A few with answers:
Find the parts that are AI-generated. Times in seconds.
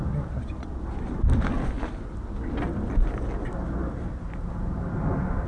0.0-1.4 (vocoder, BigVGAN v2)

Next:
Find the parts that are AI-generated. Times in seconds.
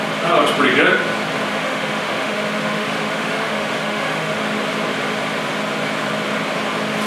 1.5-4.4 (autoencoder, DAC-VAE)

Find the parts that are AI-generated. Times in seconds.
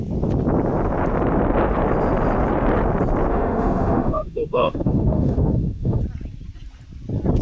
3.3-6.0 (autoencoder, DAC-VAE)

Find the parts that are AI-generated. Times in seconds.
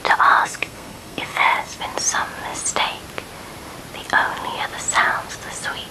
0.4-1.8 (codec, SNAC)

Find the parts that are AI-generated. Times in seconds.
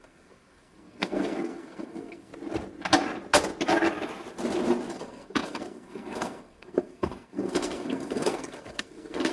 0.0-2.3 (codec, SNAC); 4.9-9.3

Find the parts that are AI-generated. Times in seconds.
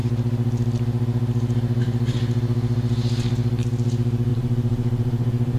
4.3-5.6 (vocoder, BigVGAN v2)